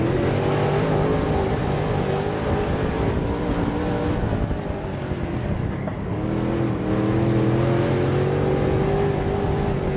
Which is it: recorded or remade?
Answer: recorded